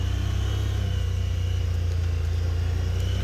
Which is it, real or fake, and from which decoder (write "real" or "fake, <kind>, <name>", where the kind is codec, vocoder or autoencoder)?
real